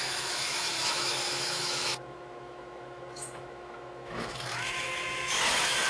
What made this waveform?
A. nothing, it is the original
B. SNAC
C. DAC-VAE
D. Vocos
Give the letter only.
C